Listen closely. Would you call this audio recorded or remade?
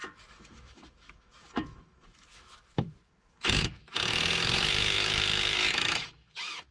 remade